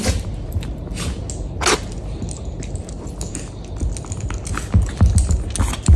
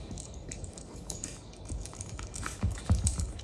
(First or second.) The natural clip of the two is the first